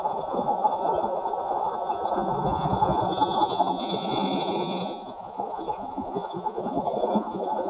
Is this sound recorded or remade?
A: remade